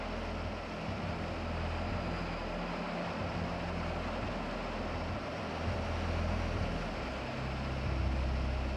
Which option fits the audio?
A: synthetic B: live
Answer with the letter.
B